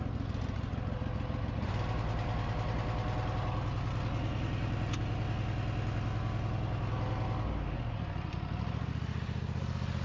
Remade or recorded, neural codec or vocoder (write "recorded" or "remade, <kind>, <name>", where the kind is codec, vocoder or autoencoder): recorded